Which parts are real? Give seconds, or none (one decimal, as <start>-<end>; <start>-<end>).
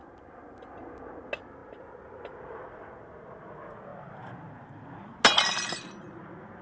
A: 0.0-6.6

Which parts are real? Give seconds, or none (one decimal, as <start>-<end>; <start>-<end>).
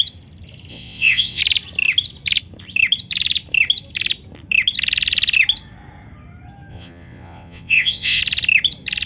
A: 0.0-0.7; 1.4-6.7; 8.2-9.1